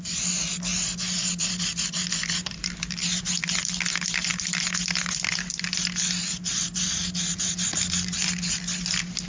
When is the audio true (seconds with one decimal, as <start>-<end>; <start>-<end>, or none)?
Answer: 0.0-9.3